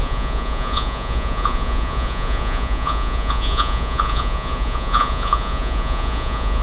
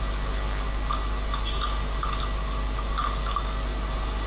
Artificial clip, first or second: first